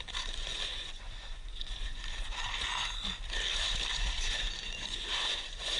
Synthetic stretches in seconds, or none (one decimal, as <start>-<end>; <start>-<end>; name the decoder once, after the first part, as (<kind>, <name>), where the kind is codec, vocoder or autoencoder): 0.0-2.4 (vocoder, Vocos); 3.9-5.8